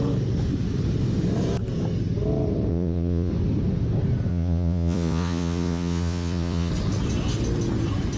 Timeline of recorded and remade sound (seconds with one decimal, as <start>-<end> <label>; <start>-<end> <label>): 0.0-2.7 recorded; 2.7-3.3 remade; 3.3-4.3 recorded; 4.3-6.7 remade; 6.7-8.2 recorded

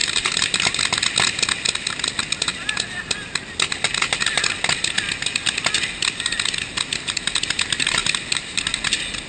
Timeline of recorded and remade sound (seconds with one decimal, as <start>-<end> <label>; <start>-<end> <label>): 0.0-0.8 remade; 0.8-8.0 recorded; 8.0-8.6 remade; 8.6-9.3 recorded

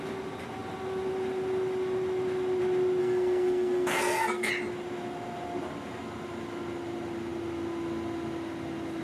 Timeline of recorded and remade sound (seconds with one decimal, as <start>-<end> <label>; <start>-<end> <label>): 0.0-3.0 recorded; 3.0-4.5 remade; 4.5-9.0 recorded

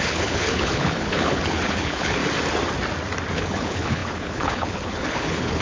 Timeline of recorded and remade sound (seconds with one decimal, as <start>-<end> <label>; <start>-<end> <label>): 0.0-2.2 remade; 2.2-3.3 recorded; 3.3-5.6 remade

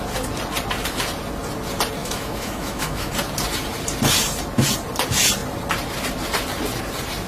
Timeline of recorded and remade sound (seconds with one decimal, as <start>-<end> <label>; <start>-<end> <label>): 0.0-2.0 recorded; 2.0-3.1 remade; 3.1-7.3 recorded